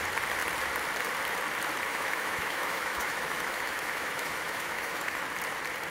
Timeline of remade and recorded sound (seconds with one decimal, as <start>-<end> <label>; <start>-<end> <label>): 0.0-1.9 recorded; 1.9-5.2 remade; 5.2-5.9 recorded